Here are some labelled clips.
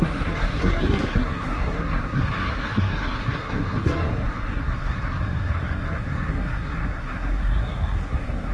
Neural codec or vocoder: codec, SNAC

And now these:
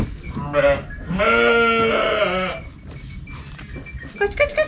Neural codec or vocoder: none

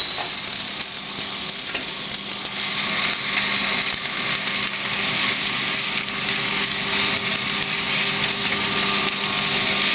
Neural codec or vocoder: none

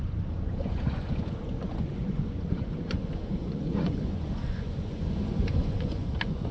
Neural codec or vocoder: vocoder, Vocos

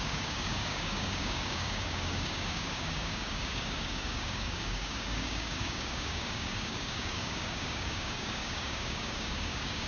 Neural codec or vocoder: codec, DAC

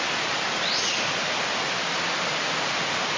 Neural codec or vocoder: none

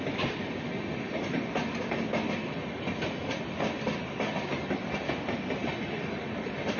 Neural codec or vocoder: none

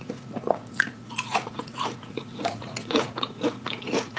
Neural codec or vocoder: vocoder, Vocos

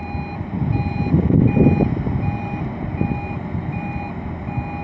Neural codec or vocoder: none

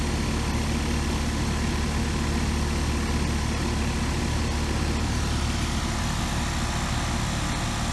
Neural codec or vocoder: none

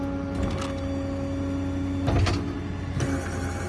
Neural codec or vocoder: none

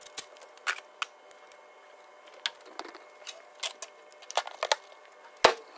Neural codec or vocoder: none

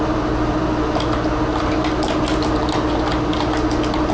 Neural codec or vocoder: none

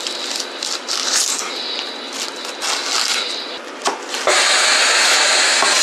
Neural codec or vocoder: none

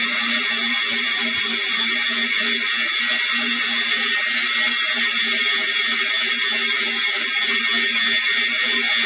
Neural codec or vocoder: none